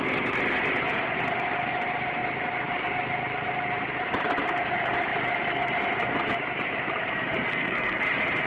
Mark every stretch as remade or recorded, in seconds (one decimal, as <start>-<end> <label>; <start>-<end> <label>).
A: 0.0-7.5 recorded; 7.5-8.0 remade; 8.0-8.5 recorded